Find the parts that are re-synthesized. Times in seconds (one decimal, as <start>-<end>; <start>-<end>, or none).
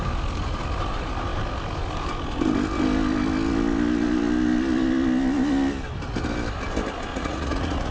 7.1-7.9